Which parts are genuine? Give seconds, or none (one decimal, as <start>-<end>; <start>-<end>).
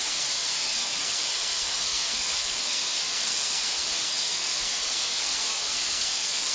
none